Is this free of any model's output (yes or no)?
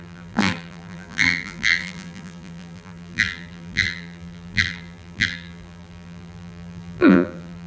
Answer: no